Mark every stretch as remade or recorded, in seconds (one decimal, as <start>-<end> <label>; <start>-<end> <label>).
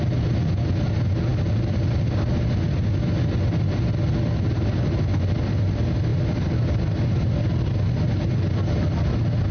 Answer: 0.0-9.5 recorded